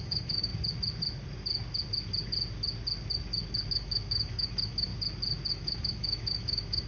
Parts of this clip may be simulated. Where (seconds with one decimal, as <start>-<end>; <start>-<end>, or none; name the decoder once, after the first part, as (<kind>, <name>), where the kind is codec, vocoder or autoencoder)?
0.0-0.5 (autoencoder, DAC-VAE); 3.7-4.9; 5.5-6.9

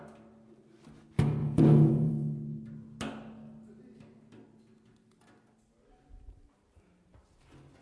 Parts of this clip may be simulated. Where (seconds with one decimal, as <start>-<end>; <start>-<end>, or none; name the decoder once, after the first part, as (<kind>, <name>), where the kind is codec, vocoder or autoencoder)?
1.4-2.1 (vocoder, Vocos)

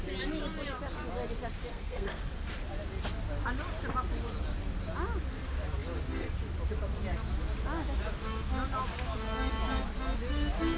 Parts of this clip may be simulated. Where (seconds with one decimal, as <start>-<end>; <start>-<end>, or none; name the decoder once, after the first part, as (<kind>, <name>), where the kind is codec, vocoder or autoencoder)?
1.7-2.2 (codec, SNAC)

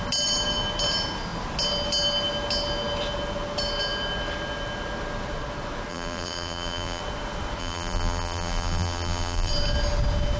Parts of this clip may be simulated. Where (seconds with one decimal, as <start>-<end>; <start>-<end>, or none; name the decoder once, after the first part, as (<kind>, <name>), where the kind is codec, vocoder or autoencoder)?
5.9-7.0 (vocoder, BigVGAN v2); 7.6-9.5

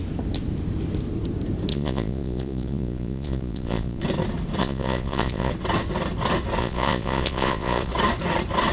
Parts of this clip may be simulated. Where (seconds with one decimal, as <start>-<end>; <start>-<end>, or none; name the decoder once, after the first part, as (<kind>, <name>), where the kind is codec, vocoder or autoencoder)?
1.7-4.0 (vocoder, Vocos); 4.6-5.5; 6.6-7.9

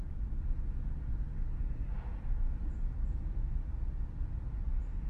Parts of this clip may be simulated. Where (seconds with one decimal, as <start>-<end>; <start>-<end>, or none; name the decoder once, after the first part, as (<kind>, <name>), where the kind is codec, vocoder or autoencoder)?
none

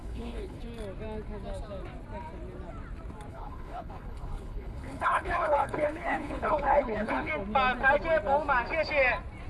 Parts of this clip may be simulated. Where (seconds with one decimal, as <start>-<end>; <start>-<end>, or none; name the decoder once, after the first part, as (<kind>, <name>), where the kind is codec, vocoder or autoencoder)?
0.0-0.6 (codec, HILCodec); 3.3-7.3